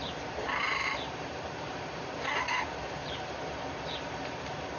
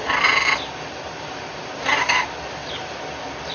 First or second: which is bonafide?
second